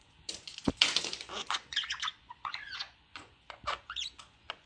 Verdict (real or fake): fake